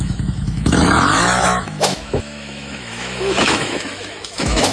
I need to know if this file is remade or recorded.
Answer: remade